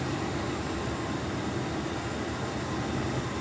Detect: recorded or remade recorded